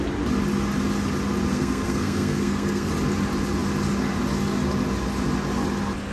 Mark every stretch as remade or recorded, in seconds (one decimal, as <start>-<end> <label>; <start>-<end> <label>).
0.0-1.5 recorded; 1.5-2.9 remade; 2.9-6.1 recorded